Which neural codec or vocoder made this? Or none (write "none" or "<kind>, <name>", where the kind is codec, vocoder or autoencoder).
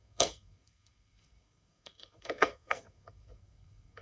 codec, SNAC